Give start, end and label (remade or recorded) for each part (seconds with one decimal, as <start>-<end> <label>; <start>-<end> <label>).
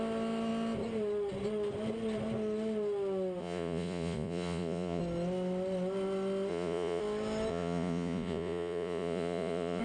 0.0-3.4 recorded; 3.4-5.0 remade; 5.0-6.5 recorded; 6.5-7.0 remade; 7.0-7.5 recorded; 7.5-9.8 remade